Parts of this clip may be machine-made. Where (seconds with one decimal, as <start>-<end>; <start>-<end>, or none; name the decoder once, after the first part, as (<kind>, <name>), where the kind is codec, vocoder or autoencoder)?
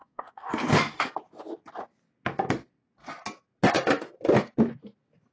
0.0-1.1 (codec, SNAC)